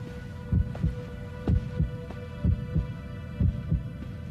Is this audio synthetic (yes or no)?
no